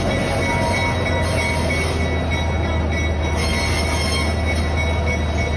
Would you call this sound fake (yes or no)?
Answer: no